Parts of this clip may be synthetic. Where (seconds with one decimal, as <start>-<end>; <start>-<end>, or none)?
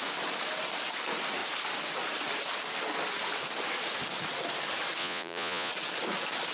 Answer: 5.0-5.7